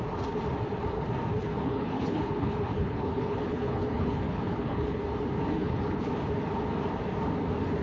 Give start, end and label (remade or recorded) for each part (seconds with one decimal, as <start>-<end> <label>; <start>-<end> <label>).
0.0-1.4 recorded; 1.4-5.0 remade; 5.0-5.6 recorded; 5.6-6.1 remade; 6.1-7.8 recorded